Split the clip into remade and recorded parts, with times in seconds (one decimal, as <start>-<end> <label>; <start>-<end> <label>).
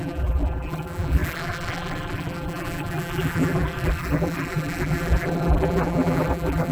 0.0-6.7 remade